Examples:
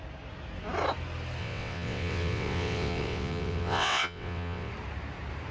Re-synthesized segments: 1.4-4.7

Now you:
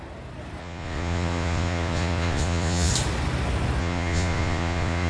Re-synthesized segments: 0.6-2.9; 3.8-5.1

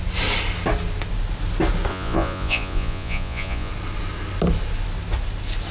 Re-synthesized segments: 1.9-3.7

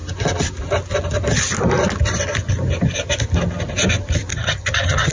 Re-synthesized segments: 4.3-5.1

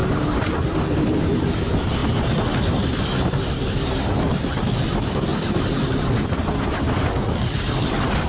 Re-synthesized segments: 0.0-2.0; 4.6-5.3; 7.8-8.3

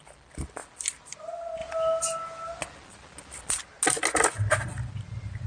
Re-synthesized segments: none